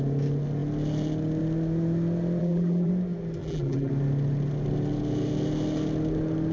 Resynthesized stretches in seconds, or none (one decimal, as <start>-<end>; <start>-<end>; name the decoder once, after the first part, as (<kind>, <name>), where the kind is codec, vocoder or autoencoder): 2.4-2.9 (vocoder, BigVGAN v2); 3.4-3.9